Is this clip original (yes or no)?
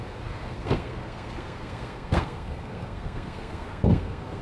no